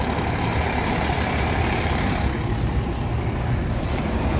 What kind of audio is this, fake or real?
fake